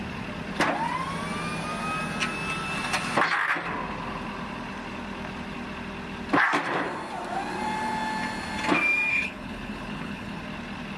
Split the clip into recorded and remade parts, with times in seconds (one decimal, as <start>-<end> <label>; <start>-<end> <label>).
0.0-9.1 recorded; 9.1-10.4 remade; 10.4-11.0 recorded